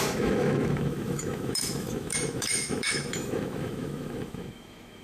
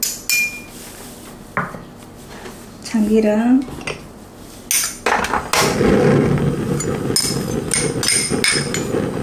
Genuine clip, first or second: second